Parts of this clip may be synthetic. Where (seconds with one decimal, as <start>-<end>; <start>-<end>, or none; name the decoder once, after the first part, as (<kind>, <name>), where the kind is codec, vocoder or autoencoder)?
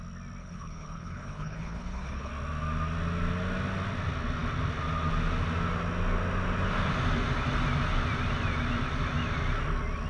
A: 0.4-2.3 (codec, HILCodec)